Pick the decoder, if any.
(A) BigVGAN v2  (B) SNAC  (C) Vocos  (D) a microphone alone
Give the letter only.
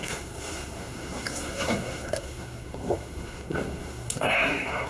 B